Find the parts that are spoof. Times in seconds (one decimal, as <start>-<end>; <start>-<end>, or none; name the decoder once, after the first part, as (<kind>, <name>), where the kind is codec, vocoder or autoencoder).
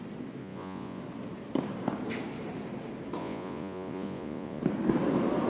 0.4-1.0 (vocoder, Vocos); 3.2-4.6